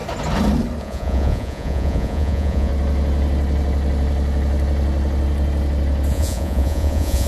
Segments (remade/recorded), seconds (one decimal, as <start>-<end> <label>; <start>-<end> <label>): 0.0-0.8 recorded; 0.8-2.7 remade; 2.7-6.1 recorded; 6.1-7.3 remade